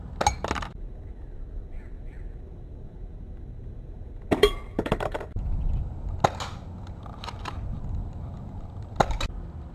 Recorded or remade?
recorded